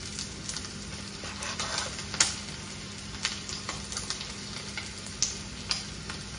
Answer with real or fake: real